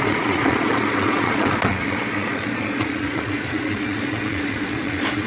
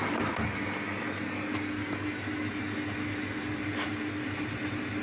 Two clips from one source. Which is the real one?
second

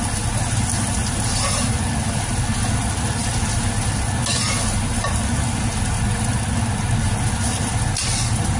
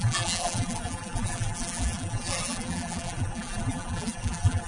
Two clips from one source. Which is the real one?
first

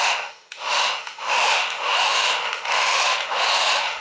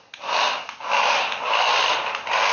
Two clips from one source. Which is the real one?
second